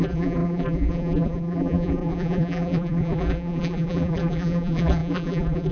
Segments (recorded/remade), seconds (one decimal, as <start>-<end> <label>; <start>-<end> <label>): 0.0-5.7 remade